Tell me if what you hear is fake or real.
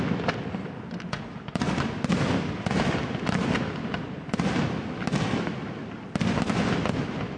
real